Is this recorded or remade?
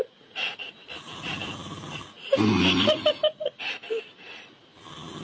recorded